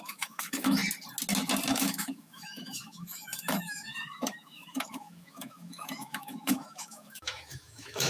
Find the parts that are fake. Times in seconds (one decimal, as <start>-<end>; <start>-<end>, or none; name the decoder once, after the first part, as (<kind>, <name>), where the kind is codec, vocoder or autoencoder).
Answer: 0.0-0.8 (autoencoder, DAC-VAE); 1.7-8.1